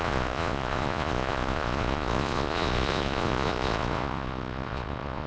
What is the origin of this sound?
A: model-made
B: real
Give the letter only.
A